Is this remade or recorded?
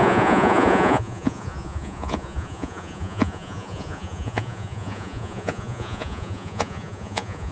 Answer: remade